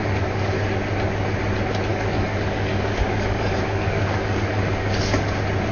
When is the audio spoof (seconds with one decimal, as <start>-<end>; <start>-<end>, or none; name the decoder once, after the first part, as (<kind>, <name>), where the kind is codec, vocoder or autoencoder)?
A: 0.0-0.6 (codec, DAC); 1.9-5.3